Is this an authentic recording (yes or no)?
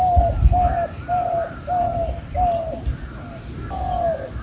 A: yes